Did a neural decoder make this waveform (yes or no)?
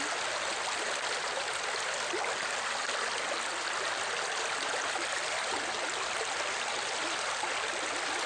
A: no